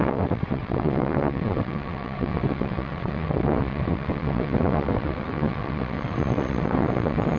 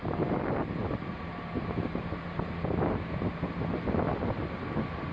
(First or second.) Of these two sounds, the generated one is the first